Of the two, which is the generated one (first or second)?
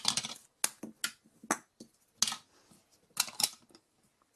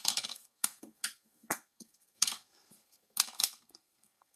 second